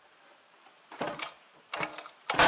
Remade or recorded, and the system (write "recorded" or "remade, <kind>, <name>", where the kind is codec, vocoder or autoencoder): recorded